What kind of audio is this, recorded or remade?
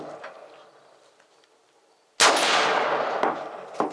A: recorded